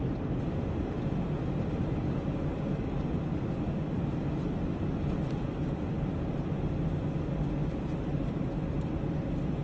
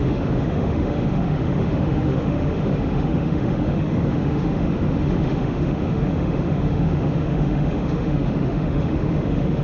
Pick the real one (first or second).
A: first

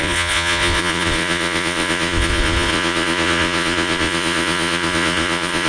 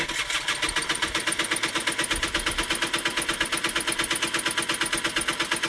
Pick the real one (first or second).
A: second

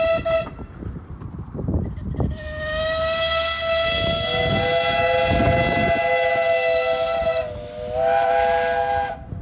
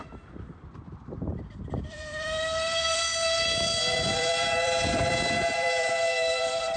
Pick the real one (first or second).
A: first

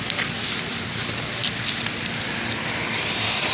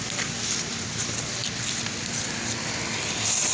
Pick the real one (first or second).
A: second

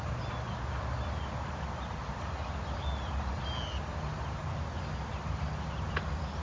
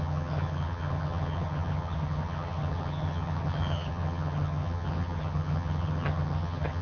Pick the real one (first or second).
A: first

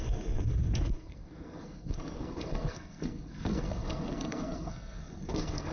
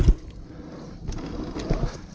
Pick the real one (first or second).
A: second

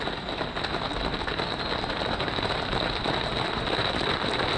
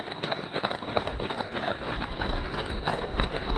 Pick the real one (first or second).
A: first